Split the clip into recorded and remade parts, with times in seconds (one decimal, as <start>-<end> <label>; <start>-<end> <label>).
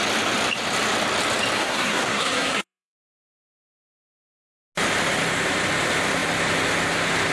0.0-1.6 recorded; 1.6-3.8 remade; 3.8-7.3 recorded